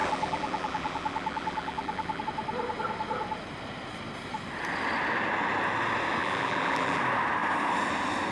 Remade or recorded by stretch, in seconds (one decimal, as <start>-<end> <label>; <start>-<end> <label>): 0.0-2.2 remade; 2.2-6.2 recorded; 6.2-7.0 remade; 7.0-8.3 recorded